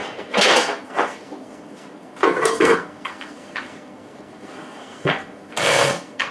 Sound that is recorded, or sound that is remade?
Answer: remade